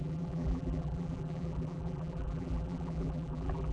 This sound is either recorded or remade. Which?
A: remade